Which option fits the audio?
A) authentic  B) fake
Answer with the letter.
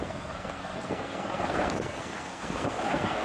B